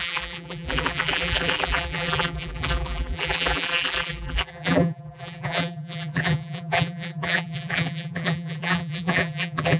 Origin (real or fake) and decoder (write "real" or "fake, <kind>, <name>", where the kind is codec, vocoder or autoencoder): fake, vocoder, BigVGAN v2